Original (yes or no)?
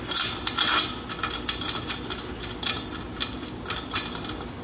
yes